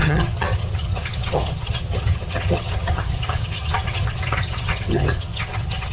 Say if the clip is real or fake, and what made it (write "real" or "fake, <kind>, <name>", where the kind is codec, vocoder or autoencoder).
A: fake, vocoder, HiFi-GAN